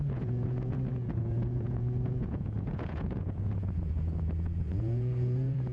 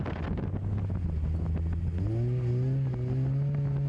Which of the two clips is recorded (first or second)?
second